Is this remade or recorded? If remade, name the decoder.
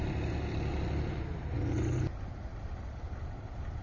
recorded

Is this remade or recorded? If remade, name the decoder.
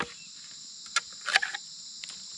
recorded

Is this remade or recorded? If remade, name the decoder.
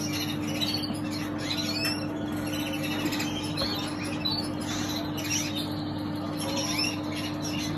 recorded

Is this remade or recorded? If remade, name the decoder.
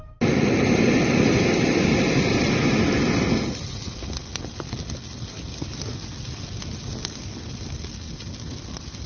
recorded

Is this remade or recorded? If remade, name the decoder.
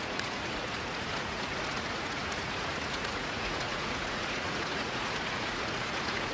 remade, vocoder, Vocos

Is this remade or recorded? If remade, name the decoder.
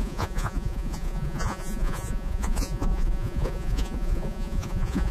remade, vocoder, Vocos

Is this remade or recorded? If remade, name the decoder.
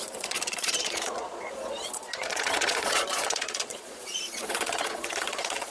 remade, vocoder, Vocos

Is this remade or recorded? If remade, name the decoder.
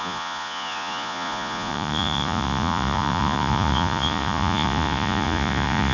remade, vocoder, Vocos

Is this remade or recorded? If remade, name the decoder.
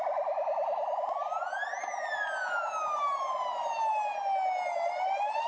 recorded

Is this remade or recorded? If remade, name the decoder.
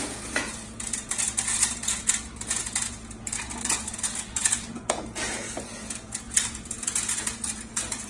remade, vocoder, Vocos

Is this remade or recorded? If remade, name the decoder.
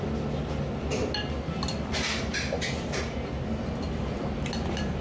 recorded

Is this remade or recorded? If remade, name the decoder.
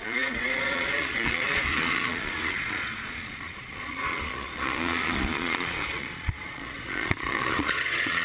remade, vocoder, Vocos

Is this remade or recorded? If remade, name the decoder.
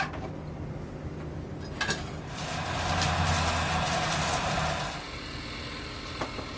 recorded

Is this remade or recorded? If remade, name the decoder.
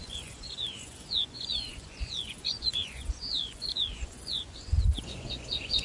remade, vocoder, Vocos